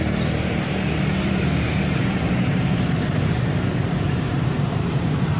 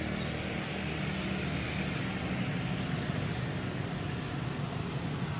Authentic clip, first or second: second